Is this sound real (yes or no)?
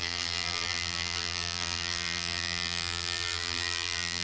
no